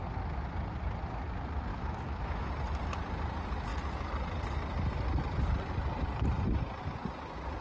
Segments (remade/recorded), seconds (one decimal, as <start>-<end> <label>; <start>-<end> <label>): 0.0-1.7 recorded; 1.7-2.5 remade; 2.5-7.6 recorded